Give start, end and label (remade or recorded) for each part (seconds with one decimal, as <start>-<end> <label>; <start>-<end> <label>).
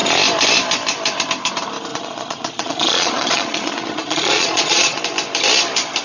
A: 0.0-1.9 recorded; 1.9-5.0 remade; 5.0-6.0 recorded